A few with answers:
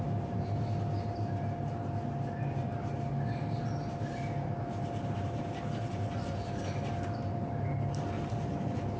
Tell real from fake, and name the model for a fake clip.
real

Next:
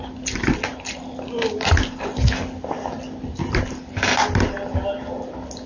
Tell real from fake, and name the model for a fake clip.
real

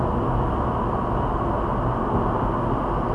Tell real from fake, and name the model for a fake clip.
real